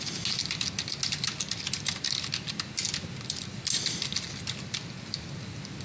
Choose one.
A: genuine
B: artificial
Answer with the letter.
A